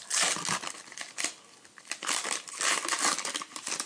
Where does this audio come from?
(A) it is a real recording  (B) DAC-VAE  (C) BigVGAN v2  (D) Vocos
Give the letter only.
A